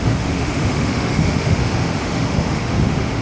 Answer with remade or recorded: remade